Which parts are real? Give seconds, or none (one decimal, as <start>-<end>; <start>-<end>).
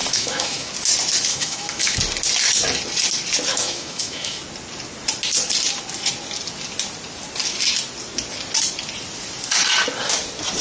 0.7-1.3; 2.0-3.5; 4.4-10.6